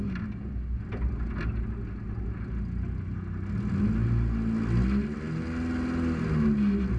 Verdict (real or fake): real